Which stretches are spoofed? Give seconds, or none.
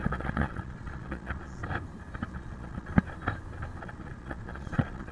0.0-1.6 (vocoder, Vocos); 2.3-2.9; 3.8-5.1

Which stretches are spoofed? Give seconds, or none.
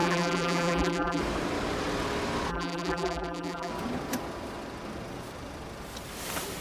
0.0-1.2 (vocoder, BigVGAN v2); 2.5-3.7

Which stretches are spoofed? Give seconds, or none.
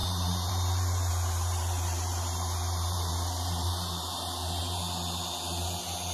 0.0-0.5 (vocoder, BigVGAN v2); 1.1-4.6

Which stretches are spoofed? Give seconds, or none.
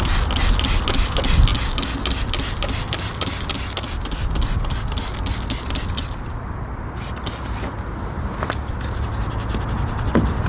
none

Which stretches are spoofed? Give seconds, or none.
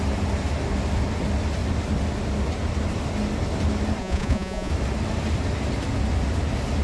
4.0-4.7 (vocoder, Vocos)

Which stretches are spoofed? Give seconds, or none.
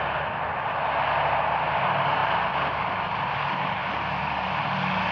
none